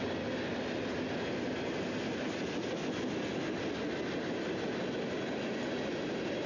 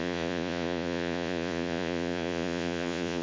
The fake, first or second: second